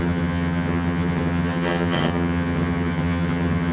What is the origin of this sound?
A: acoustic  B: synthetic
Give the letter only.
B